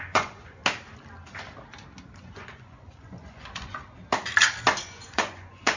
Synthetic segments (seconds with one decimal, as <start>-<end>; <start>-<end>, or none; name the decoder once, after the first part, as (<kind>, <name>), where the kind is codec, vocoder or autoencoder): 0.0-0.6 (vocoder, Vocos); 2.3-3.8; 4.8-5.8